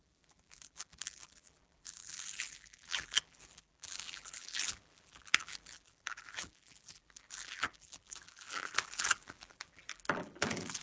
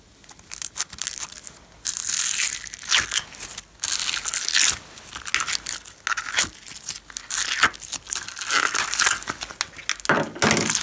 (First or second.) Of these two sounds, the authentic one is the second